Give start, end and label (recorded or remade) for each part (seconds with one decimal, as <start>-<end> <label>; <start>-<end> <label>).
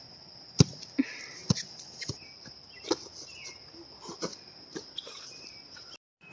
0.0-6.3 recorded